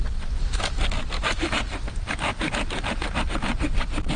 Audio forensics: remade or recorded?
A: recorded